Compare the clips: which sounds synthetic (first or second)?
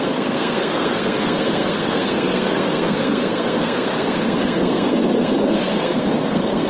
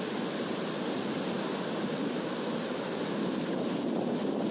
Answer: first